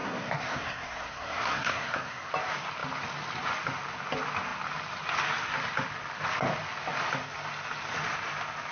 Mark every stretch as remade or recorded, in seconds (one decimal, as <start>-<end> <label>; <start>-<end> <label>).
0.0-2.3 remade; 2.3-8.7 recorded